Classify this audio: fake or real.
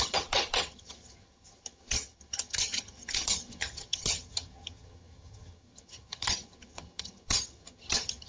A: fake